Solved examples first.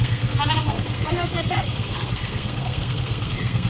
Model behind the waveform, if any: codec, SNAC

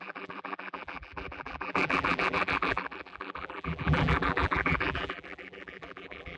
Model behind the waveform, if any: vocoder, BigVGAN v2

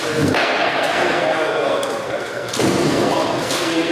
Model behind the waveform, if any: codec, SNAC